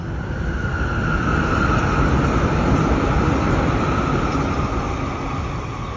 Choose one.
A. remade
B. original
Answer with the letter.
B